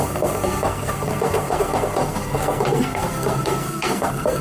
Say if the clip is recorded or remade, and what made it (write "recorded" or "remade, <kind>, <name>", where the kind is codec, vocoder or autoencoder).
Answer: remade, codec, SNAC